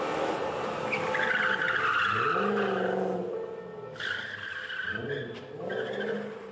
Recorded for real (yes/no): yes